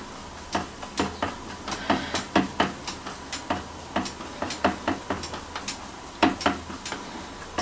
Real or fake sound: real